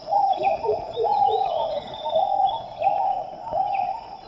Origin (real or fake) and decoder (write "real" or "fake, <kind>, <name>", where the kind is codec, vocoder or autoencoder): fake, vocoder, Vocos